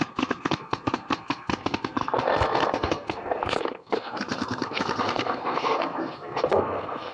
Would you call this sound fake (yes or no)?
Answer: yes